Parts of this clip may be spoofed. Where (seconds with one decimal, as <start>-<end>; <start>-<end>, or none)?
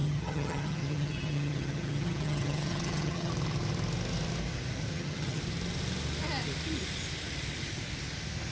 0.0-3.3; 4.9-5.4